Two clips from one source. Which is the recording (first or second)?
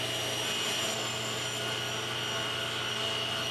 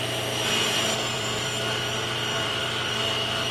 first